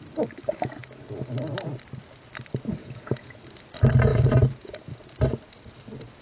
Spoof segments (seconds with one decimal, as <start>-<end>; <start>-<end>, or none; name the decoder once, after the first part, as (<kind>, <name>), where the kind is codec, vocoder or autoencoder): 2.8-3.4 (vocoder, Vocos); 4.1-5.0